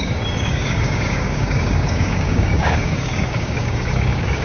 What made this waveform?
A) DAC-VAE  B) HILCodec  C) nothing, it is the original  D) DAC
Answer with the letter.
D